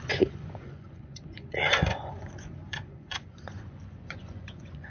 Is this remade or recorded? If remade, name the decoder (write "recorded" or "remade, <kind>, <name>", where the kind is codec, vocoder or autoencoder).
remade, vocoder, Vocos